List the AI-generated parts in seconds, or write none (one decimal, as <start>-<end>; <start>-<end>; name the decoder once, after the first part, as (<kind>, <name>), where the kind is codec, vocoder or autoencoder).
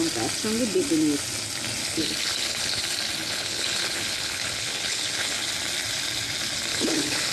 1.8-2.8 (codec, HILCodec); 3.2-5.5; 6.7-7.3